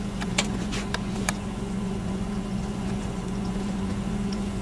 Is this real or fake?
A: fake